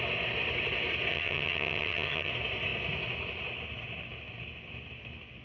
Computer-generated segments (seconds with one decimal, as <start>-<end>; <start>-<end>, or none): 1.1-2.3